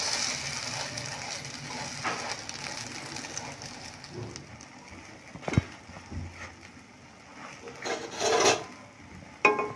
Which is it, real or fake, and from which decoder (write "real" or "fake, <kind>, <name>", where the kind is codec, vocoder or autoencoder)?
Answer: real